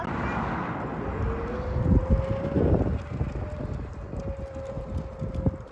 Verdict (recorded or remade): recorded